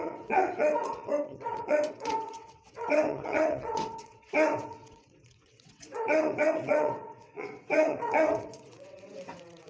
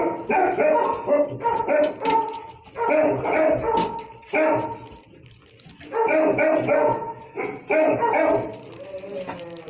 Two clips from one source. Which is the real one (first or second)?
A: second